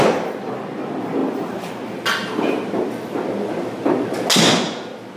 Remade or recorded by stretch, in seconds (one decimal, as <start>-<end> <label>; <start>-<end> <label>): 0.0-1.2 recorded; 1.2-1.7 remade; 1.7-2.2 recorded; 2.2-2.8 remade; 2.8-5.2 recorded